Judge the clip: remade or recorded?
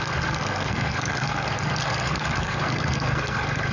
remade